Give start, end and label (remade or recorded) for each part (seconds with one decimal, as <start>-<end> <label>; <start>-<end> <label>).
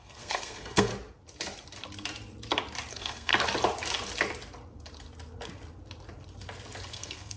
0.0-0.9 remade; 0.9-2.9 recorded; 2.9-3.3 remade; 3.3-6.9 recorded; 6.9-7.4 remade